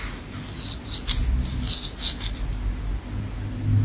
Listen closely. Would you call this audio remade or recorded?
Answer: recorded